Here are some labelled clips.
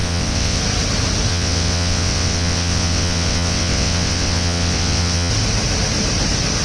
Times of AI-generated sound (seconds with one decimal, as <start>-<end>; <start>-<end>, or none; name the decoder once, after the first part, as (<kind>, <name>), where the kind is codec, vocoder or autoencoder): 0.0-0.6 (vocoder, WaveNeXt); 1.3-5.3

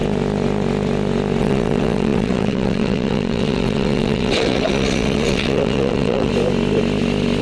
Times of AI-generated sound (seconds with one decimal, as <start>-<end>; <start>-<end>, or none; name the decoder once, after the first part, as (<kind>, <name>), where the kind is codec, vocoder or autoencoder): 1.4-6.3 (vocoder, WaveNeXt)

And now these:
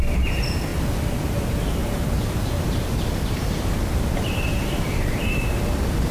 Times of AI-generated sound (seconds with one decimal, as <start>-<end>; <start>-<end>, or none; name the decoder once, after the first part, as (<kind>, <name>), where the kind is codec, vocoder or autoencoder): 0.0-0.7 (vocoder, BigVGAN v2); 1.2-6.1